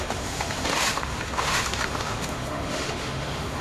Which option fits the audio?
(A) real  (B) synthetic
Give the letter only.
B